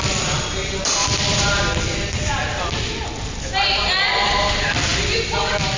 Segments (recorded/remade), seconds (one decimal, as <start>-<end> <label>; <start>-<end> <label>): 0.0-1.0 recorded; 1.0-1.6 remade; 1.6-4.9 recorded; 4.9-5.8 remade